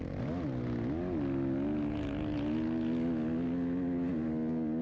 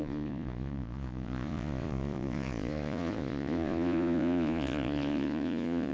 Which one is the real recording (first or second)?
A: first